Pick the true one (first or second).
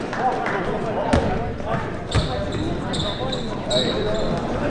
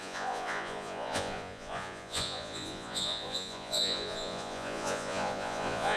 first